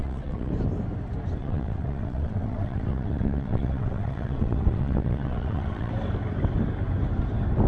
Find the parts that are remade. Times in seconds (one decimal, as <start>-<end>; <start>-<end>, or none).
0.0-0.5; 1.4-5.9